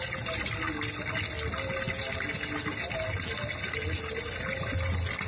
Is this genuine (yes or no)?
yes